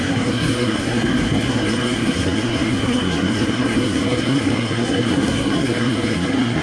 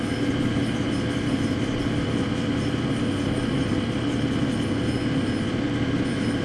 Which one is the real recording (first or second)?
second